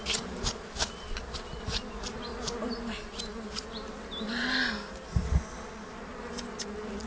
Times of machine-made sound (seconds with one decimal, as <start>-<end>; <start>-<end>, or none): none